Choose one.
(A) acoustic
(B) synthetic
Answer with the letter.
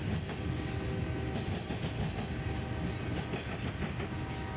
A